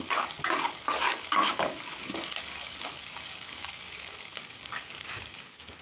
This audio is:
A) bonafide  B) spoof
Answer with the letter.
B